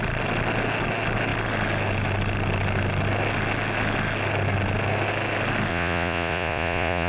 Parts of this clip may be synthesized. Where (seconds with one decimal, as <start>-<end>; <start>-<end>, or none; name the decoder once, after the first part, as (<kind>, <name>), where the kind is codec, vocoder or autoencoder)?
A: 5.7-7.1 (vocoder, Vocos)